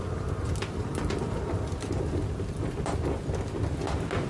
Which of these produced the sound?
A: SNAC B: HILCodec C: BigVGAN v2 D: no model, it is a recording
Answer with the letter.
D